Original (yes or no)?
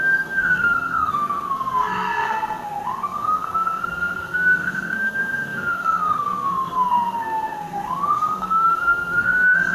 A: no